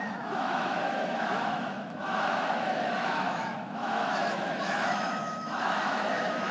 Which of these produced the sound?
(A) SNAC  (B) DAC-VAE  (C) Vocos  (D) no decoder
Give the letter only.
B